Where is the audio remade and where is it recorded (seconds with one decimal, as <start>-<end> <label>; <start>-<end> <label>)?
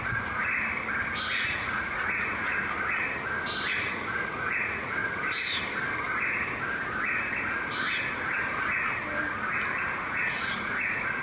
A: 0.0-0.5 remade; 0.5-1.3 recorded; 1.3-2.5 remade; 2.5-3.8 recorded; 3.8-5.0 remade; 5.0-8.0 recorded; 8.0-8.5 remade; 8.5-10.0 recorded; 10.0-11.2 remade